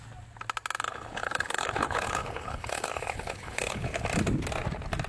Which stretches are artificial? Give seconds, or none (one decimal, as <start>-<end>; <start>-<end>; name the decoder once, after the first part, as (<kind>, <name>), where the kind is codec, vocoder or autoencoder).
0.9-4.0 (codec, HILCodec)